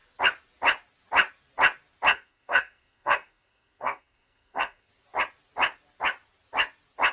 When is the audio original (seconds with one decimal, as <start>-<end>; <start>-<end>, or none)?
0.0-2.1; 4.9-7.1